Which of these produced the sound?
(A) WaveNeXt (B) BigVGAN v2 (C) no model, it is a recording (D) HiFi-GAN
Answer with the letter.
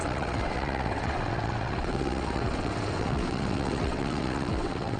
A